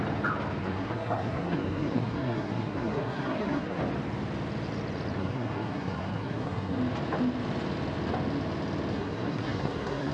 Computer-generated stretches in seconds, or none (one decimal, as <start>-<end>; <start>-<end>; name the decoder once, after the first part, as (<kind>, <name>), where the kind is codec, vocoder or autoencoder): 0.6-3.8 (codec, SNAC); 5.2-6.8; 8.9-10.1